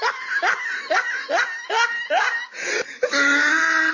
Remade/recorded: recorded